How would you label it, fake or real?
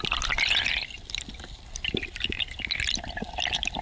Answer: real